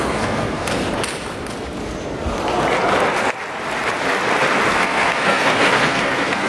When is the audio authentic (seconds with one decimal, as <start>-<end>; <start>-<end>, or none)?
0.8-4.7